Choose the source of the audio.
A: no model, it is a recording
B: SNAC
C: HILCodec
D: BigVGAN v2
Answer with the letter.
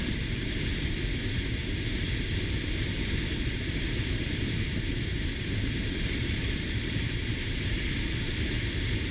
D